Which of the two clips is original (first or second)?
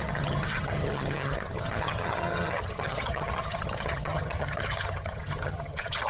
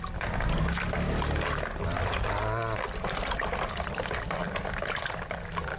second